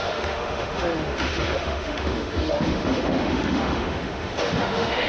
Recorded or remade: remade